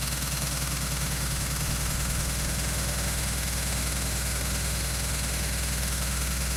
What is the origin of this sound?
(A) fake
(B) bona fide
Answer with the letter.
A